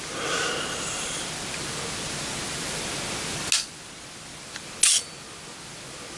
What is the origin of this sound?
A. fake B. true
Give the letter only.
B